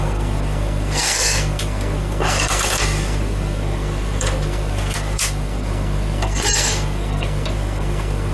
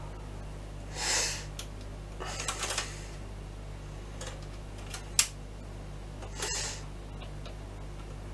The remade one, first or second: first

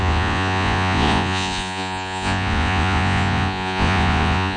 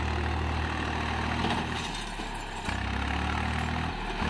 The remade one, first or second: first